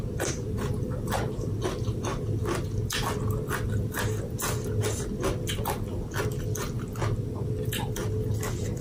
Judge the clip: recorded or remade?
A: recorded